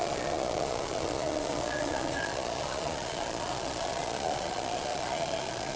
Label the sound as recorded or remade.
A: remade